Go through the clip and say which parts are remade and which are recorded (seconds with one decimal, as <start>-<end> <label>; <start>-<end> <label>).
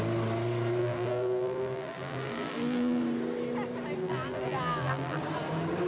0.0-0.8 recorded; 0.8-3.0 remade; 3.0-4.0 recorded; 4.0-5.2 remade; 5.2-5.9 recorded